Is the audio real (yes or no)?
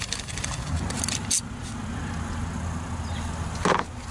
yes